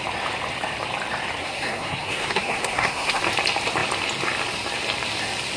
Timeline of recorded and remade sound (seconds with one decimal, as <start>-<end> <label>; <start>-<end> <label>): 0.0-1.4 recorded; 1.4-3.2 remade; 3.2-5.6 recorded